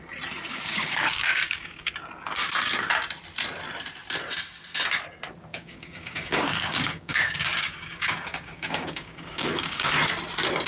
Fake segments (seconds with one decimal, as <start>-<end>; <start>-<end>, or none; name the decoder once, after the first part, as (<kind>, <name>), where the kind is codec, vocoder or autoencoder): 0.5-1.9 (codec, DAC); 5.5-10.1